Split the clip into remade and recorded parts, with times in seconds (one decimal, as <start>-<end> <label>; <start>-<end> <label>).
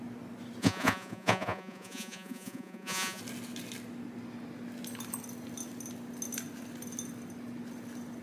0.0-0.6 recorded; 0.6-3.2 remade; 3.2-8.2 recorded